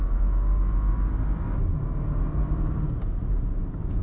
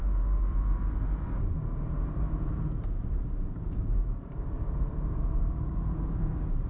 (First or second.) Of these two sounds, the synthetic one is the second